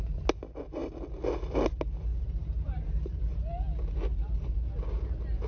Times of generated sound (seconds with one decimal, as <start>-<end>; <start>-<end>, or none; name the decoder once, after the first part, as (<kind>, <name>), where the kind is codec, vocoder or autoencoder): none